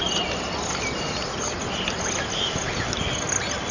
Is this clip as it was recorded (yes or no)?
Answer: yes